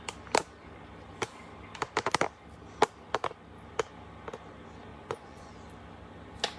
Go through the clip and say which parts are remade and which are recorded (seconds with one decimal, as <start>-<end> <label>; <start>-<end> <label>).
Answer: 0.0-4.9 recorded; 4.9-5.5 remade; 5.5-6.6 recorded